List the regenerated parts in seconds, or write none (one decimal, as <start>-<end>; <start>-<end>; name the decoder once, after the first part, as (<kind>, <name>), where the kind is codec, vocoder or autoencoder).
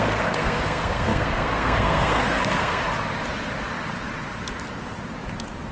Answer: 0.0-2.8 (codec, SNAC)